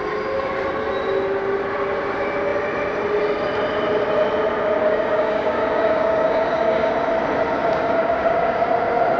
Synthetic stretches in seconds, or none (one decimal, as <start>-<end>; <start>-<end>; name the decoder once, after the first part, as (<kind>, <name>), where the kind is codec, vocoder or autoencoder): 4.8-6.9 (codec, DAC); 7.6-8.7